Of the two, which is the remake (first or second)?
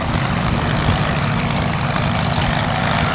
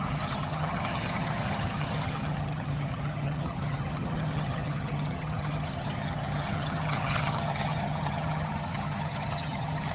second